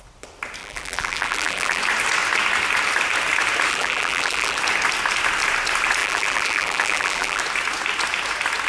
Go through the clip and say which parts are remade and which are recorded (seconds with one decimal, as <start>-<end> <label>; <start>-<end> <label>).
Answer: 0.0-0.6 recorded; 0.6-1.8 remade; 1.8-3.7 recorded; 3.7-4.6 remade; 4.6-6.0 recorded; 6.0-7.4 remade; 7.4-8.7 recorded